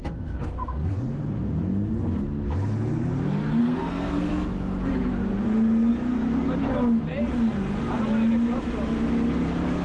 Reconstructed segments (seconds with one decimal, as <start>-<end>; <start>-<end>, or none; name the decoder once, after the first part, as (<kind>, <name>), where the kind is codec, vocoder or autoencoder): 0.0-0.9 (codec, SNAC); 3.6-4.3